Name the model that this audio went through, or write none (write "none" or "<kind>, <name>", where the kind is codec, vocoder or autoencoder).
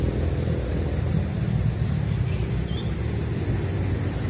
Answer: none